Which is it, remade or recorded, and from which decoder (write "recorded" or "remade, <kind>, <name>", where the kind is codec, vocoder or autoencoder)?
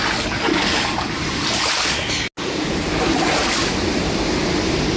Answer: recorded